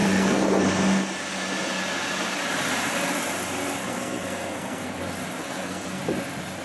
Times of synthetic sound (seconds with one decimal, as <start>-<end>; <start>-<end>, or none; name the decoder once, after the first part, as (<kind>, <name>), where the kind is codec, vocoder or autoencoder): 0.0-0.6 (codec, SNAC); 3.8-5.0; 5.4-6.0